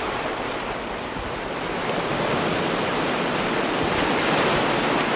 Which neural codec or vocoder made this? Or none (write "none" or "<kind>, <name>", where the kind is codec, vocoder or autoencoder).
none